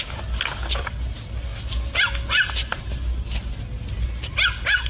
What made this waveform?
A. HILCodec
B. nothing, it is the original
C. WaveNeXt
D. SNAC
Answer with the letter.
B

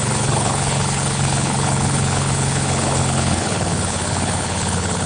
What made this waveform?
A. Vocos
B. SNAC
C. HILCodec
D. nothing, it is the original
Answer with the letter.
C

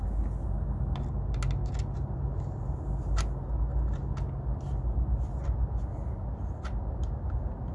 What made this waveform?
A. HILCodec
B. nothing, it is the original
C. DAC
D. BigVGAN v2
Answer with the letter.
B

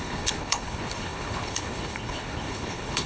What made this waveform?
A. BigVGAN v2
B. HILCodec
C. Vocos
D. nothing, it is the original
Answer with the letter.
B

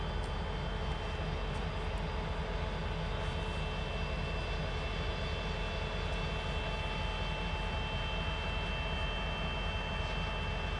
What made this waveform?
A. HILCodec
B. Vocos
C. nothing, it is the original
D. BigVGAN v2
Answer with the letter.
C